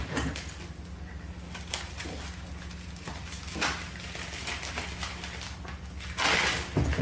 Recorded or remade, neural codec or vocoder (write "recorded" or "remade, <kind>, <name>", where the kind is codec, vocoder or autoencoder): recorded